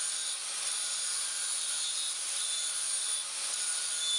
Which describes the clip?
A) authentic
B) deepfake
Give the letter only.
A